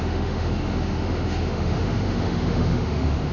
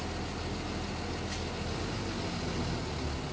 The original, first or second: second